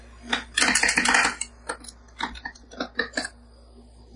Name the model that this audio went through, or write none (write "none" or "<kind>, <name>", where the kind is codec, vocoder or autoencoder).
none